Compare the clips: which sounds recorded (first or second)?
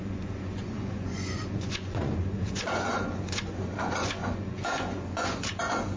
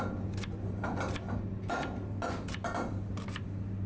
second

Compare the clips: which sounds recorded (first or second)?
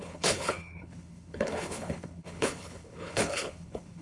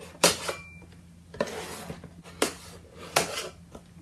second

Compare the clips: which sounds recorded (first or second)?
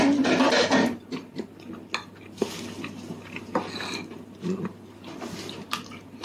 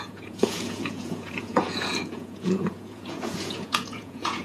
first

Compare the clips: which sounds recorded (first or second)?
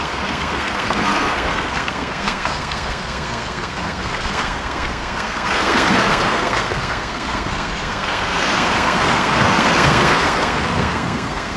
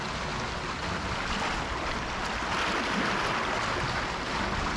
second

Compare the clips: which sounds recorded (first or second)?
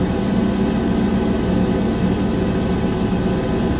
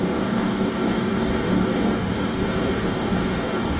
first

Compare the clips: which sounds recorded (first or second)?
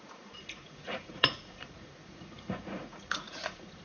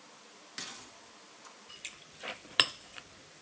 second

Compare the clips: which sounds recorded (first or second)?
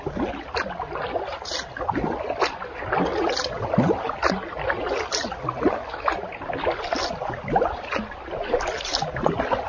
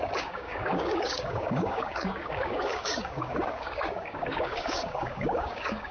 first